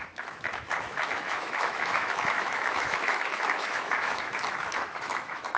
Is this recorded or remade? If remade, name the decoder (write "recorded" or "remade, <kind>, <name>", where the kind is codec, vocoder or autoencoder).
remade, autoencoder, DAC-VAE